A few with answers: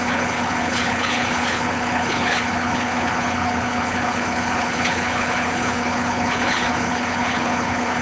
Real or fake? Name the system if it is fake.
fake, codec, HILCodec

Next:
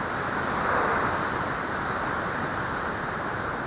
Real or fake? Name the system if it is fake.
real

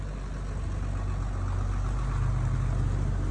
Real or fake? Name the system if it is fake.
real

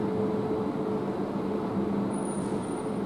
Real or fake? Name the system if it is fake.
real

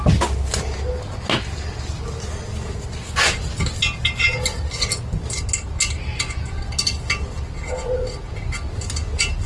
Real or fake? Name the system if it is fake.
real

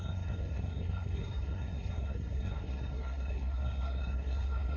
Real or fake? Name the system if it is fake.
fake, codec, SNAC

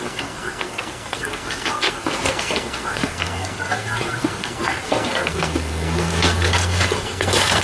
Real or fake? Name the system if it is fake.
fake, codec, SNAC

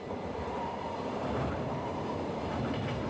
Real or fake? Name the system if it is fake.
fake, vocoder, BigVGAN v2